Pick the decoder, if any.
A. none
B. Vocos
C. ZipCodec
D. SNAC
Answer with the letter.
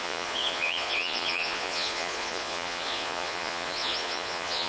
B